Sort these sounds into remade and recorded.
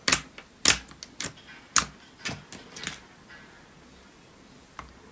recorded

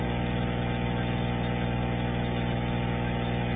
recorded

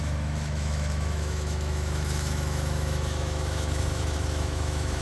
remade